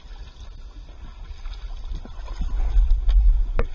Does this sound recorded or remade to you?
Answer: recorded